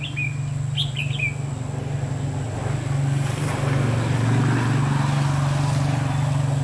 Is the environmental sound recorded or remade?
recorded